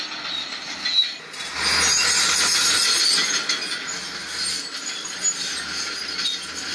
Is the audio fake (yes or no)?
no